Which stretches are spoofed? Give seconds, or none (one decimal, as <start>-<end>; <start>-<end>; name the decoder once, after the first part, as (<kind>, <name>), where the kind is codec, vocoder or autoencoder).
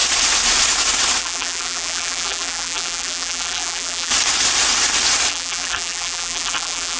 1.2-4.1 (vocoder, BigVGAN v2); 5.3-7.0